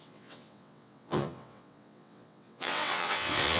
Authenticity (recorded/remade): remade